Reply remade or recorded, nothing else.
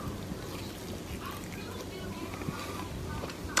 recorded